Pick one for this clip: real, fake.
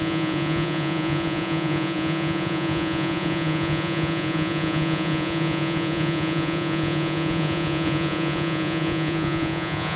fake